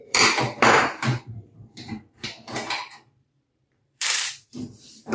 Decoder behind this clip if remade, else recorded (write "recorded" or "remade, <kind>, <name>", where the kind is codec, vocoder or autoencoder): remade, vocoder, BigVGAN v2